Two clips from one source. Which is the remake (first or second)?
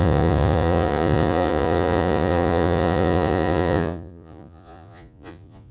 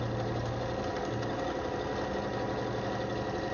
first